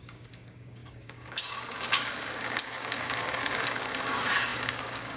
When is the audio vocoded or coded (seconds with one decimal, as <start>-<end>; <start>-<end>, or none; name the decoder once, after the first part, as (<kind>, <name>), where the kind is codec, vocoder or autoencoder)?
0.0-5.2 (codec, DAC)